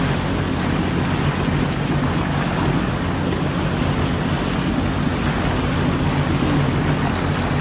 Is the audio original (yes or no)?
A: yes